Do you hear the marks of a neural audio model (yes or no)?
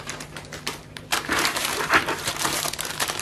yes